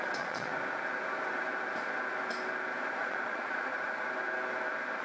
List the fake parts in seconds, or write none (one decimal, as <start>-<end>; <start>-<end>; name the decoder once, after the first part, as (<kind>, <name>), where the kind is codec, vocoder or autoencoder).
0.0-0.5 (vocoder, Vocos); 3.0-3.7